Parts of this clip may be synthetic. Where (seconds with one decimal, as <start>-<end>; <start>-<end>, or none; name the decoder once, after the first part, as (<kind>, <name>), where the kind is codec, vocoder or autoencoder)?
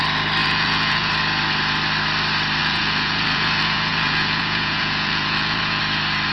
0.4-1.1 (vocoder, Vocos); 2.6-5.8